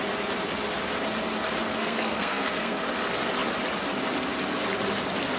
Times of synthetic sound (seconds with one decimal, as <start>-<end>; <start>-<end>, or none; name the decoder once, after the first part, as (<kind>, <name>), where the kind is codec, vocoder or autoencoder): 1.7-2.8 (codec, SNAC)